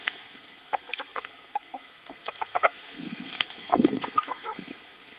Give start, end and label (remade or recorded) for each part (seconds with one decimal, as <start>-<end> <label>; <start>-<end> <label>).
0.0-5.2 remade